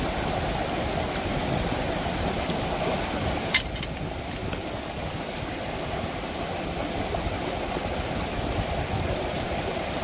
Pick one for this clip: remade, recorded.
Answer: recorded